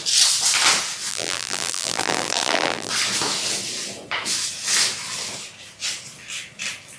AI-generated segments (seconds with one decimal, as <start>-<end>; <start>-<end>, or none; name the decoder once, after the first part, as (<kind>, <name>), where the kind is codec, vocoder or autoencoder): 1.1-2.9 (vocoder, BigVGAN v2)